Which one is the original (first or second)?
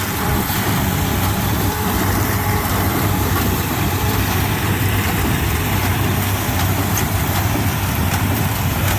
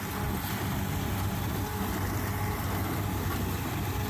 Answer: second